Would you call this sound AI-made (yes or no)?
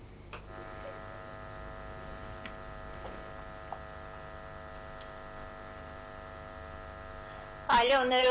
no